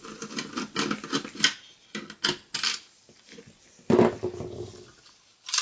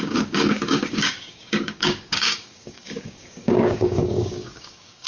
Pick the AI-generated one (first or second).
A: second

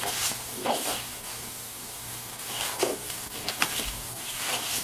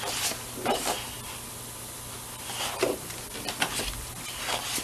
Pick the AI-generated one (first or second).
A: first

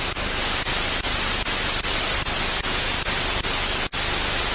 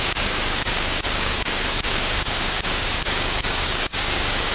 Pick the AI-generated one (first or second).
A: second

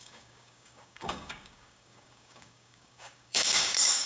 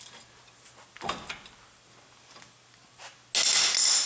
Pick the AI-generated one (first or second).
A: first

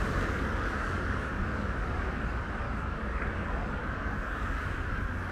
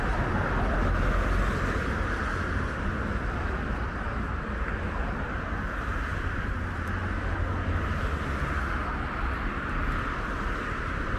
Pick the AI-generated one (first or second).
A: first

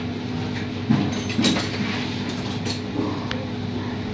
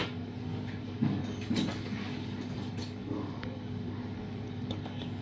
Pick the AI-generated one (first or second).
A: second